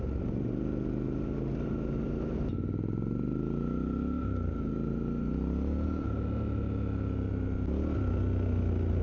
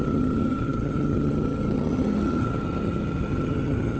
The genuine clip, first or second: first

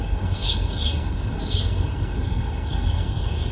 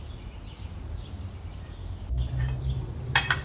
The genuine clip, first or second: second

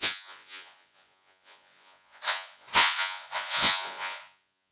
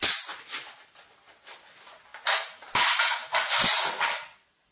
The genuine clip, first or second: second